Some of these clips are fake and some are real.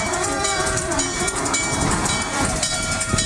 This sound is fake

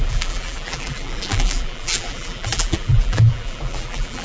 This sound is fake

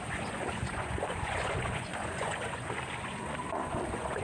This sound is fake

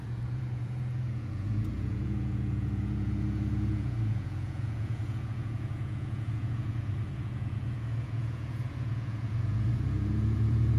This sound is fake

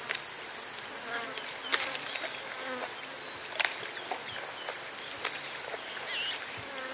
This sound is real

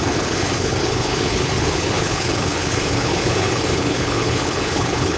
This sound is fake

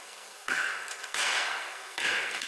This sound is fake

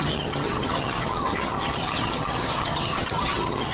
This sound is fake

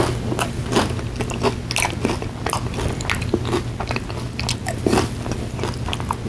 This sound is real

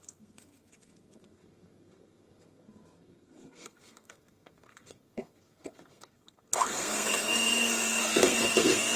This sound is fake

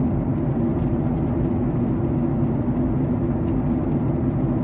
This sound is real